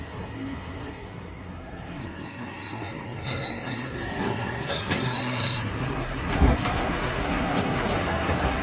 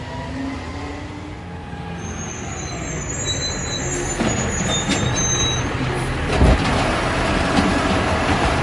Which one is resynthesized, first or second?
first